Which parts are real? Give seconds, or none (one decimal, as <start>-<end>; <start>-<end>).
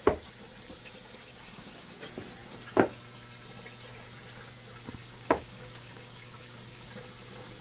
0.0-1.3; 1.9-5.0; 6.9-7.6